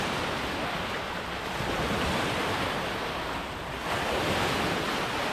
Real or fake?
real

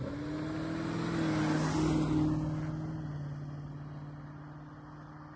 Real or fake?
real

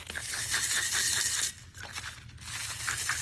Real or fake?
real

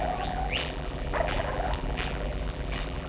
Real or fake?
fake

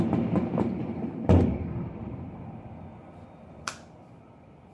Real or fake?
fake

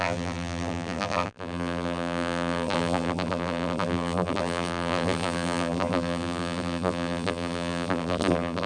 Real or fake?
fake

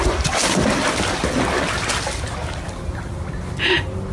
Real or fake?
real